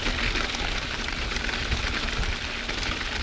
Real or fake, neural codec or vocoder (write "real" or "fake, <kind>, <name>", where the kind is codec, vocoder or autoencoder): fake, vocoder, BigVGAN v2